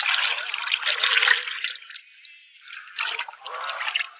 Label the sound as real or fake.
real